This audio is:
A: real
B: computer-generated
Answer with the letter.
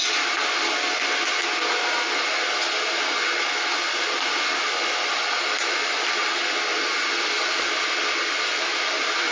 A